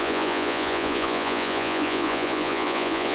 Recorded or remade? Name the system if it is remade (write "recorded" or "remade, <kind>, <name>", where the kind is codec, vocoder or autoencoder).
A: remade, vocoder, Vocos